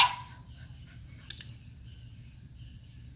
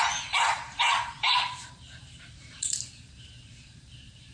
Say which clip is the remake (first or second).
second